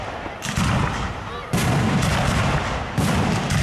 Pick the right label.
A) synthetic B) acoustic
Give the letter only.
B